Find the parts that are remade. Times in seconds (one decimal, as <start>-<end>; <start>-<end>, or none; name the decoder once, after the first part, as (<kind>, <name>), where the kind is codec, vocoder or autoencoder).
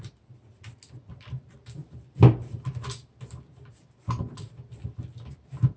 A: none